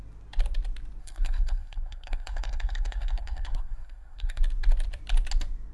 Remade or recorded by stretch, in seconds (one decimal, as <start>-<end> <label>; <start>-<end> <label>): 0.0-1.0 recorded; 1.0-4.4 remade; 4.4-5.7 recorded